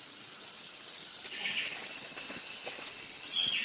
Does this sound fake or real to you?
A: fake